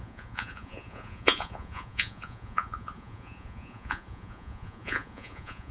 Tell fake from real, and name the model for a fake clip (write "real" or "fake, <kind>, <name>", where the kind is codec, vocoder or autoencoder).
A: fake, vocoder, Vocos